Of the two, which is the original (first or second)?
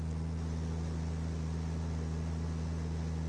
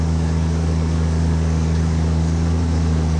first